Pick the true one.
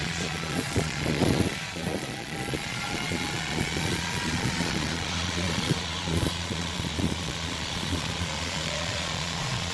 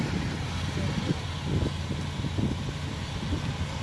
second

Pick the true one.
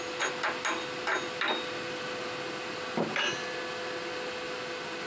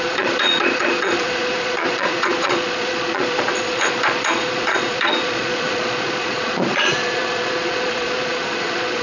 first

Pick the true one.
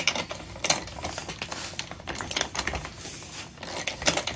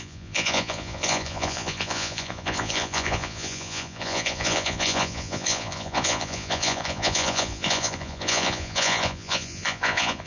first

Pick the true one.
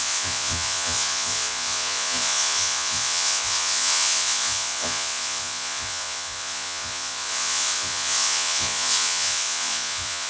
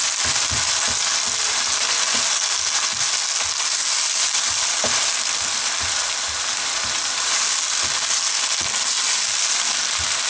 second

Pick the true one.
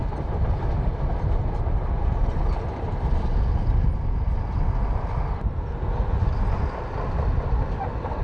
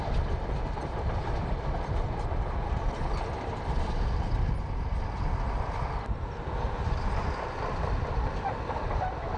first